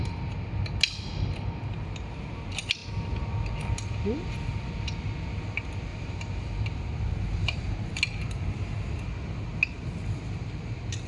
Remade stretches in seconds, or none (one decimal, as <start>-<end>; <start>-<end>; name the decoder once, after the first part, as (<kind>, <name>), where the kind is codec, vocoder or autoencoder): 5.9-6.8 (vocoder, BigVGAN v2); 7.4-8.0